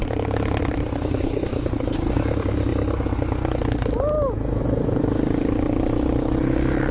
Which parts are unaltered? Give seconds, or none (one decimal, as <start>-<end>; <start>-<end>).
0.0-0.6; 2.7-4.6